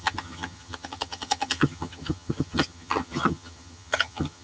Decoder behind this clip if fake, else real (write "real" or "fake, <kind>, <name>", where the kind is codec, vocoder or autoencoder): fake, vocoder, HiFi-GAN